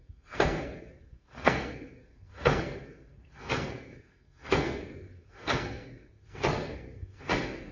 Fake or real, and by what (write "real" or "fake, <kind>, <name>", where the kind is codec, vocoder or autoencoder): fake, codec, SNAC